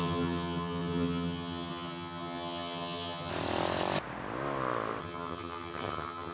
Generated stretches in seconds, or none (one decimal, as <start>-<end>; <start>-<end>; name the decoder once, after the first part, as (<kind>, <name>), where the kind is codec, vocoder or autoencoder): 0.0-3.3 (vocoder, HiFi-GAN); 5.0-6.3